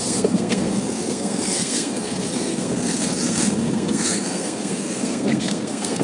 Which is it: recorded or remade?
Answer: remade